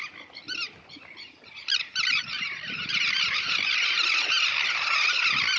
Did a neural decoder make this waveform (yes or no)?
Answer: no